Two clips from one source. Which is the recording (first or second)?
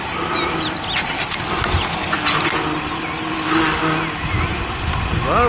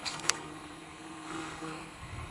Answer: first